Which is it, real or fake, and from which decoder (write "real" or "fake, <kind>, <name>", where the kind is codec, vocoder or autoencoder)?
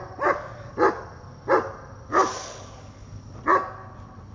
real